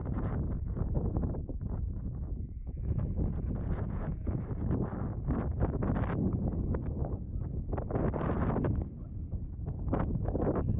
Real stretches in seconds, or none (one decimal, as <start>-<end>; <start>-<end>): 4.4-10.8